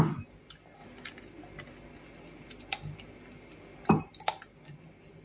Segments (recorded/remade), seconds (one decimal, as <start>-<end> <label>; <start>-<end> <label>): 0.0-5.2 recorded